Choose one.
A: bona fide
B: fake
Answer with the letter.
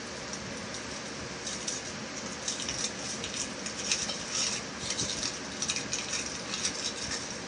A